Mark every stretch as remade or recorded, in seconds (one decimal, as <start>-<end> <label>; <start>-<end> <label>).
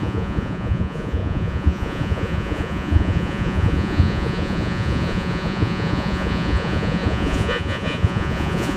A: 0.0-8.8 remade